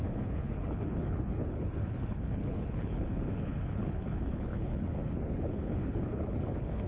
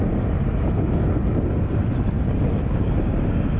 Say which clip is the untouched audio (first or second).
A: second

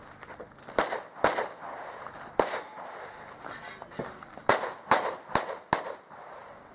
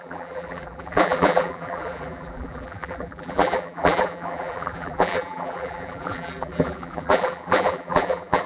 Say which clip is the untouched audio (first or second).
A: first